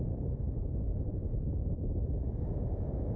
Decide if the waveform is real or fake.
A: fake